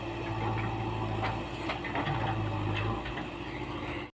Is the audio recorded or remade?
recorded